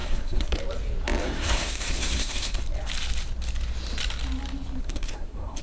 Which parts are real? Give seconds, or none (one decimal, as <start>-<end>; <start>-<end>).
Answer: 0.6-1.2; 2.6-4.8